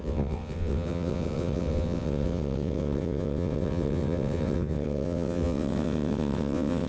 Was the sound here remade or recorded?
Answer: remade